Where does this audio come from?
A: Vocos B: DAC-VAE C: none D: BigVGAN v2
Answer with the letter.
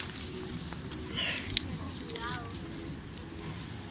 C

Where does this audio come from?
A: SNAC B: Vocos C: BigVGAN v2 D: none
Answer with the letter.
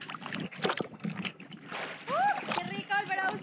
D